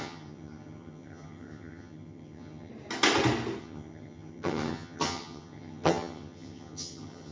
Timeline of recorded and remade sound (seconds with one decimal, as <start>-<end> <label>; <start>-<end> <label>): 0.0-2.7 remade; 2.7-3.6 recorded; 3.6-7.3 remade